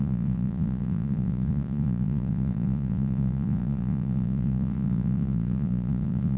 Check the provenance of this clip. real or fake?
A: fake